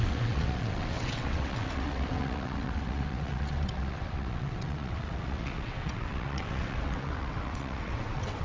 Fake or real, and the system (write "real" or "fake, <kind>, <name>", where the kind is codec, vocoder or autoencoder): fake, vocoder, WaveNeXt